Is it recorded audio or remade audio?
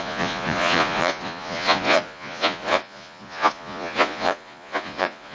remade